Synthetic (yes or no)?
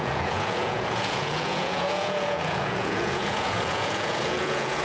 yes